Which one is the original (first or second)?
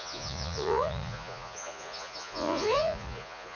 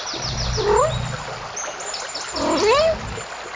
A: second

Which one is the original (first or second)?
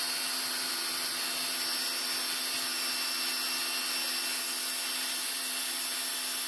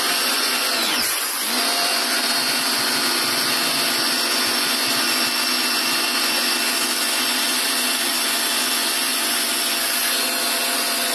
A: first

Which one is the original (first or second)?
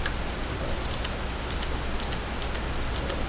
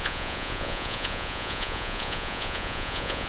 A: first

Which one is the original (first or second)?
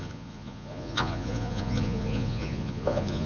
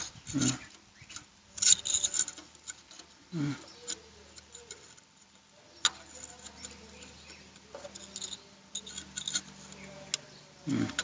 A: second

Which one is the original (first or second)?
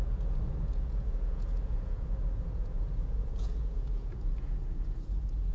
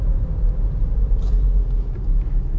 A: second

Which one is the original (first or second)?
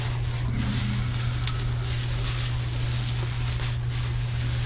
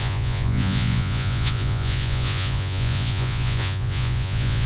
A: first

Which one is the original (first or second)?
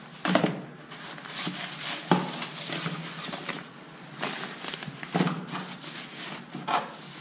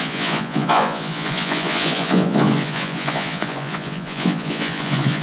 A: first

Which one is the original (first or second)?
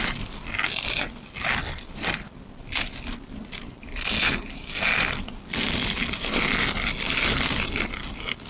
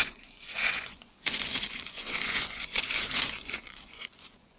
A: first